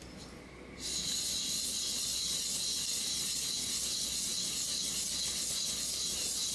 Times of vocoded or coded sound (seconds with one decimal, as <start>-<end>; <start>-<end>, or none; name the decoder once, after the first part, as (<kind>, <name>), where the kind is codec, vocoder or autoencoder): none